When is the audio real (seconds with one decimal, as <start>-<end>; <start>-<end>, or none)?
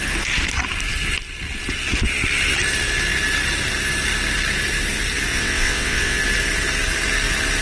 0.0-5.3; 6.2-7.6